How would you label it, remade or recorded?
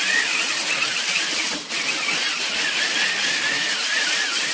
recorded